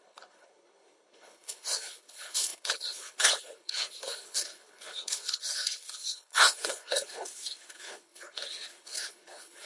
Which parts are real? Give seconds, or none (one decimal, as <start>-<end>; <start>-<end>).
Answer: none